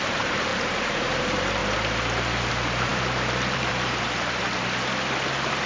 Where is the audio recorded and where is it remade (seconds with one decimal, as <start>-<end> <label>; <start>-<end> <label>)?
0.0-1.6 remade; 1.6-2.5 recorded; 2.5-4.4 remade; 4.4-5.3 recorded; 5.3-5.7 remade